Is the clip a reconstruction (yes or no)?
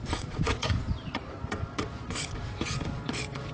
yes